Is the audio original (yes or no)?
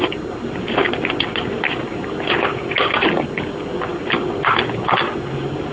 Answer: yes